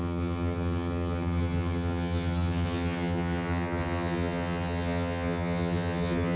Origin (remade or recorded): remade